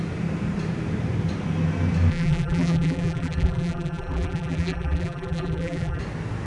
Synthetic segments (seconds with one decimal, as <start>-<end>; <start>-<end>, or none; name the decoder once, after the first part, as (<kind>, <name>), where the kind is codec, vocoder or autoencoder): 2.1-6.0 (vocoder, BigVGAN v2)

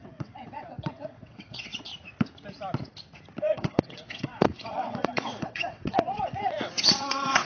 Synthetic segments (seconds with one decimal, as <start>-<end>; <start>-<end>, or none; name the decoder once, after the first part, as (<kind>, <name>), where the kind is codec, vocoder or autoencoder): 0.0-1.9 (vocoder, WaveNeXt); 3.4-7.4

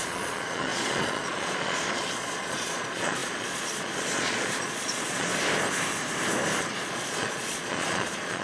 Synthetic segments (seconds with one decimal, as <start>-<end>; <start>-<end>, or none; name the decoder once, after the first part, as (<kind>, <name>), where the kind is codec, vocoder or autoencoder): 0.0-5.3 (vocoder, Vocos); 6.6-8.4

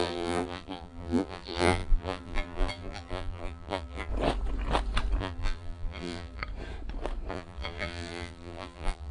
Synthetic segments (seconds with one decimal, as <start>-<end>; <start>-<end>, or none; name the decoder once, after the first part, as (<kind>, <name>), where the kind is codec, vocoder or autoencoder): 0.0-4.1 (vocoder, BigVGAN v2); 5.2-6.4; 7.3-9.1

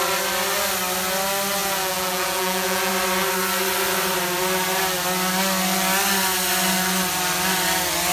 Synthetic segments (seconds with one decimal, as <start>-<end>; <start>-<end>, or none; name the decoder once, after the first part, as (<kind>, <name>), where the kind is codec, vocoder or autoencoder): 1.6-2.9 (vocoder, Vocos)